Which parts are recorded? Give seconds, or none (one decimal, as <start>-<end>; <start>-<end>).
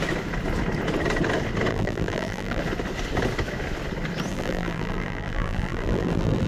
0.0-1.7; 2.6-4.3